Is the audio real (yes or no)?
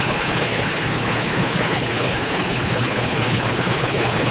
no